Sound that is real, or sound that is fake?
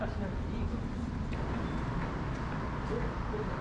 real